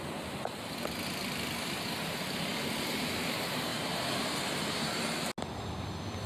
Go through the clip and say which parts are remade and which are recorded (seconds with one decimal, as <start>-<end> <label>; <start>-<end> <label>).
0.0-6.3 recorded